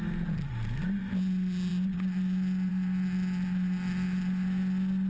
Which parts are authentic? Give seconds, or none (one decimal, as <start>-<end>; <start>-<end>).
0.0-5.1